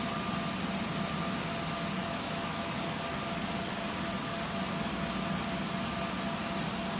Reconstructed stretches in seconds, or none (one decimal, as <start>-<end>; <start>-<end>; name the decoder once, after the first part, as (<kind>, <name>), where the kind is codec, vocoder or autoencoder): 2.0-2.7 (autoencoder, DAC-VAE)